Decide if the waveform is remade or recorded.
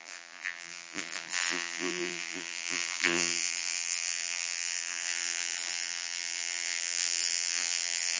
remade